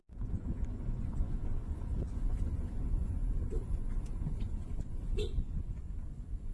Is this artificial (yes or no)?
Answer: yes